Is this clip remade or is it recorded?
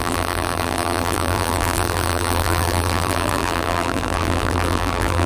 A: remade